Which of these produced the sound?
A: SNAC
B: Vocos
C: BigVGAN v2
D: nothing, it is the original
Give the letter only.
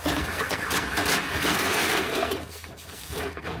A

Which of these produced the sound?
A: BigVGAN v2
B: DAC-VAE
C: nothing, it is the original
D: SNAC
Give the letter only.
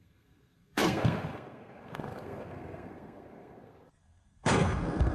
D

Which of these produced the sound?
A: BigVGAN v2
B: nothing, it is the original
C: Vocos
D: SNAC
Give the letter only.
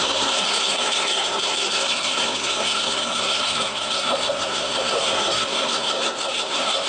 D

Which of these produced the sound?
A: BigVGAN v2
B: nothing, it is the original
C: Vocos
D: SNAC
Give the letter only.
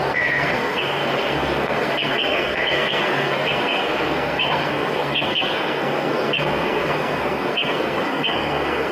D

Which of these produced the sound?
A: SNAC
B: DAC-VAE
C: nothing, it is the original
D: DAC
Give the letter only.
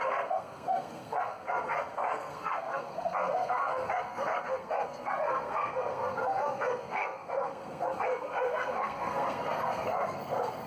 A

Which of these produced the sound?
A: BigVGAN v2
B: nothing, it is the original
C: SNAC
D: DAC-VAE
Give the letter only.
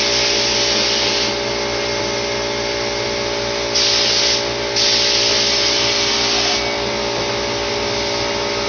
B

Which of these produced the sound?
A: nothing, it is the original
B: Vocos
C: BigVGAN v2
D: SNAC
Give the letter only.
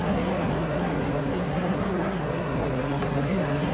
D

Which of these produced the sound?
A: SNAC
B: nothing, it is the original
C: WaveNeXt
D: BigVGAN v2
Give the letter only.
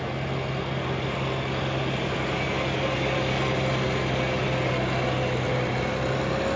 B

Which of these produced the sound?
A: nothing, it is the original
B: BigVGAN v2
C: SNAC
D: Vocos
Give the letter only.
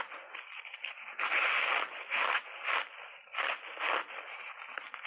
A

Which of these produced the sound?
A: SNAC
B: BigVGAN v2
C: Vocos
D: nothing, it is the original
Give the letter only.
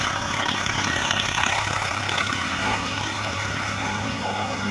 A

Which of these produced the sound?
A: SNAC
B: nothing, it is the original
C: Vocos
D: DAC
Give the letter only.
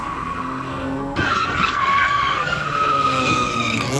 A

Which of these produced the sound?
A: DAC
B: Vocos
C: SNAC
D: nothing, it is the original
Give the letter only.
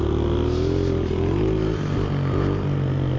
D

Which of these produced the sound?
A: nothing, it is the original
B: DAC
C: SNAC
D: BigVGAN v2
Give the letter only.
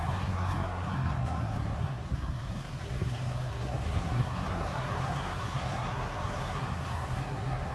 C